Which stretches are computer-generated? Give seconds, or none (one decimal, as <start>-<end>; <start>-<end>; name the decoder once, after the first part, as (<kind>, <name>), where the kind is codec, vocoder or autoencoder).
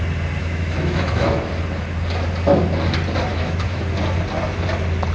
0.4-1.5 (autoencoder, DAC-VAE); 3.3-3.8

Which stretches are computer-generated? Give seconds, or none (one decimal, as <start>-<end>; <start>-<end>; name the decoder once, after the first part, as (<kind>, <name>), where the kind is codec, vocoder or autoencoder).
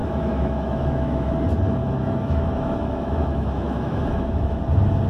0.0-1.3 (autoencoder, DAC-VAE); 1.8-4.6